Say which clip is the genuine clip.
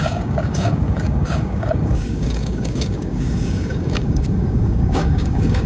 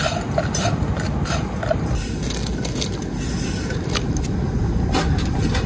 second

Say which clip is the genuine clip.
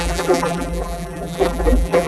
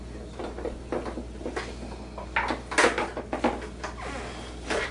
second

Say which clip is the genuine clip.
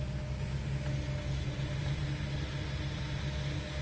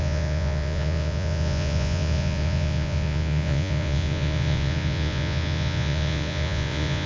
first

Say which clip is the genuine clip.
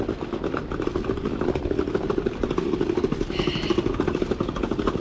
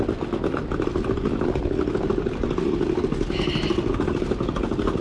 second